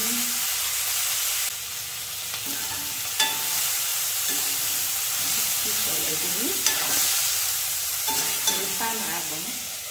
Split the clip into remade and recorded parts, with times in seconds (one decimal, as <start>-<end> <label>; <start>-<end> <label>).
0.0-3.9 recorded; 3.9-8.6 remade; 8.6-9.9 recorded